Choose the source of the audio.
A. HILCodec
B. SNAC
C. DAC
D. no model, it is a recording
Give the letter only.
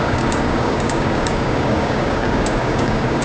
C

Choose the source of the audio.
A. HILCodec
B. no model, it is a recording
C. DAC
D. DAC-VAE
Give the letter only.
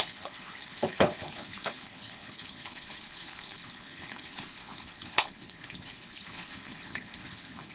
A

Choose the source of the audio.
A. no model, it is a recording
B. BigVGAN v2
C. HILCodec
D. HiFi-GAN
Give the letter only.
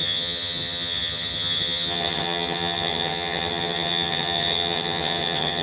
D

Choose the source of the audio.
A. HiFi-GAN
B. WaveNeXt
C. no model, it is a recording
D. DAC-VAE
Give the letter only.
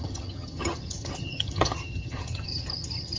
A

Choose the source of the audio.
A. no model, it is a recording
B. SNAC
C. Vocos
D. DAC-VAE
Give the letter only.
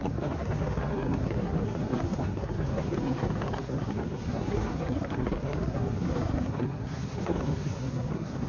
B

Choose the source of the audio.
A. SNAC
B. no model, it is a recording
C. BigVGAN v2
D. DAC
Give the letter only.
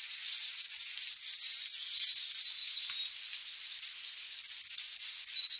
B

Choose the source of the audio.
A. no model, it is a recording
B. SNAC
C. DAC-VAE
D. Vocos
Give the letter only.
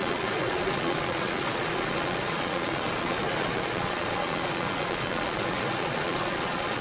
D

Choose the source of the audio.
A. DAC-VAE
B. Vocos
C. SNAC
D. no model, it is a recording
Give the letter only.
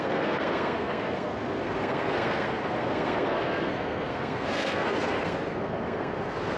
C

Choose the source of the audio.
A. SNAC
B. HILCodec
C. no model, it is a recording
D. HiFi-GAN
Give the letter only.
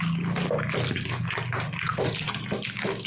C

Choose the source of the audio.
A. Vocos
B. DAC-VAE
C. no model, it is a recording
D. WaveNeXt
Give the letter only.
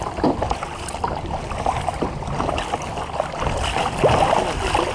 C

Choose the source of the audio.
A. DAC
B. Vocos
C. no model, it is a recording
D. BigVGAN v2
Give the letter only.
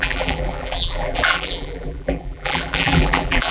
D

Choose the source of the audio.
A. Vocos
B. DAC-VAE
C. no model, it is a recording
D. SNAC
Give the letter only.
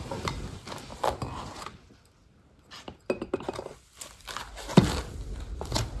C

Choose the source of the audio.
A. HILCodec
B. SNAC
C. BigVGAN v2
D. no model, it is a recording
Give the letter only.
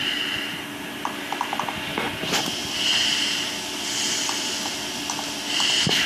D